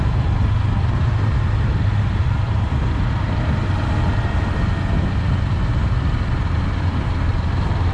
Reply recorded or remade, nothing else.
recorded